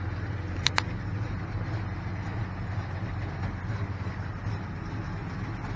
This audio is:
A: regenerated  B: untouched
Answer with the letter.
B